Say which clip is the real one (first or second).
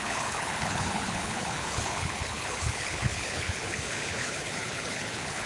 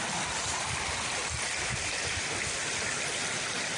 second